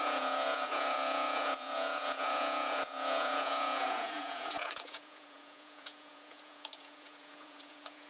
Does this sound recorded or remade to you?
remade